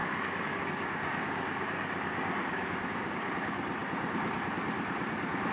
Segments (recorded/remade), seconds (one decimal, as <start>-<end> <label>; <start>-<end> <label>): 0.0-3.3 remade; 3.3-5.5 recorded